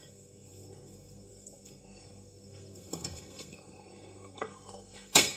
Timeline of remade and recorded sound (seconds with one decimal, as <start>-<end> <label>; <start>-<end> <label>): 0.0-5.4 remade

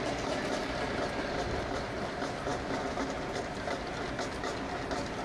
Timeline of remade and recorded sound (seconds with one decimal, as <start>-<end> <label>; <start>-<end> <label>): 0.0-5.2 recorded

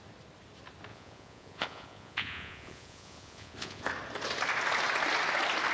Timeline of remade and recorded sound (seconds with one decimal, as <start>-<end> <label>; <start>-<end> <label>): 0.0-0.9 recorded; 0.9-3.9 remade; 3.9-5.7 recorded

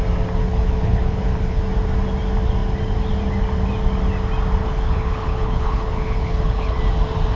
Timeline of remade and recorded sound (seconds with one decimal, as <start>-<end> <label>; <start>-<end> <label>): 0.0-0.4 recorded; 0.4-1.6 remade; 1.6-4.6 recorded; 4.6-6.8 remade; 6.8-7.3 recorded

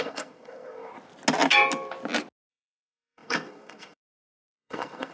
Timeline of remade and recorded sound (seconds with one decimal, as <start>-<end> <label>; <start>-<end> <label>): 0.0-0.9 remade; 0.9-2.5 recorded; 2.5-5.1 remade

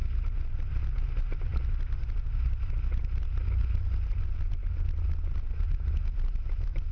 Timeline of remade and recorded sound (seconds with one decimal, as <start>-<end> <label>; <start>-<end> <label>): 0.0-6.9 recorded

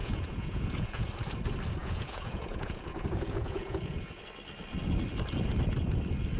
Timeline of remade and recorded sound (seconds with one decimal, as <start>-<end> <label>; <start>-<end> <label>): 0.0-1.1 remade; 1.1-1.8 recorded; 1.8-4.2 remade; 4.2-6.4 recorded

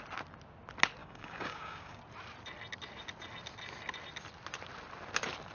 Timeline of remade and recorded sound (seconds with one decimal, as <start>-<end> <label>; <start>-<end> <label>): 0.0-1.0 recorded; 1.0-2.0 remade; 2.0-5.5 recorded